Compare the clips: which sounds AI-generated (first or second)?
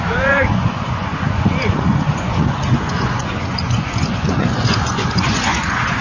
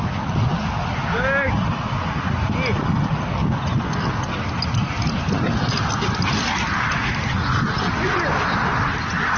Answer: first